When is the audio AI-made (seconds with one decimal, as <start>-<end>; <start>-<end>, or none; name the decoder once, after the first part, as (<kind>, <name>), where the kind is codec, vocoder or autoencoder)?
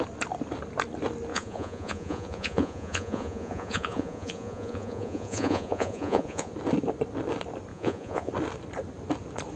1.3-6.5 (vocoder, Vocos); 7.7-8.3